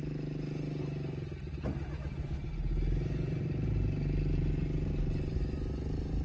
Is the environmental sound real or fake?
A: real